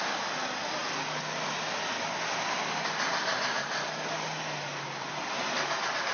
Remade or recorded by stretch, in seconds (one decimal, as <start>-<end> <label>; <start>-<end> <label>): 0.0-6.1 recorded